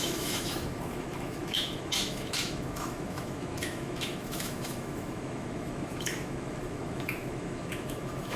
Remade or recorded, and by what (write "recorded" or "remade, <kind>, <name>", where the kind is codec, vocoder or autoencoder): remade, autoencoder, DAC-VAE